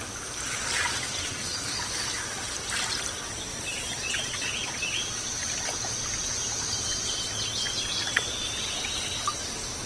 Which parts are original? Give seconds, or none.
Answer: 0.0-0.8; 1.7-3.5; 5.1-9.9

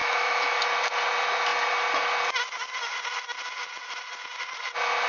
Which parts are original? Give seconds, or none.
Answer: 0.6-5.1